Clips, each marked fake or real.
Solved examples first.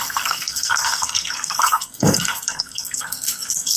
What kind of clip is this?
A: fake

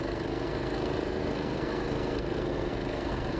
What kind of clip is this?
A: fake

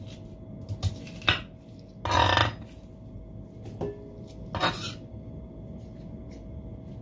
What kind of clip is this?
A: real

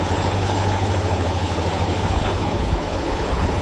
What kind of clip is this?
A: fake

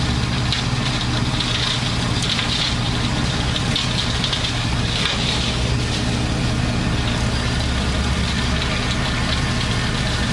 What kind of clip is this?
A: real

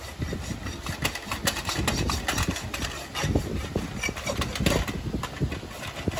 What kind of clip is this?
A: real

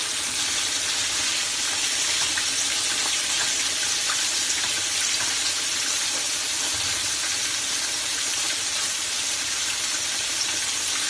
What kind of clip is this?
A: real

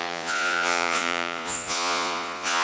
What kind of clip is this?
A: fake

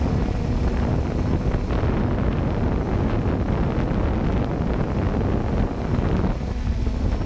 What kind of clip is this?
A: real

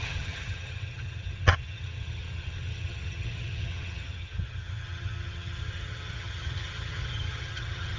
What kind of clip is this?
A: fake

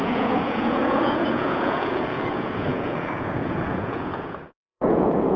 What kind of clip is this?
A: fake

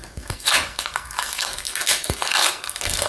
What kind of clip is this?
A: fake